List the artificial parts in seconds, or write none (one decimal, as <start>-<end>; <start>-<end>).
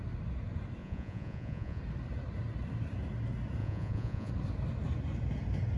0.8-1.8; 3.6-4.3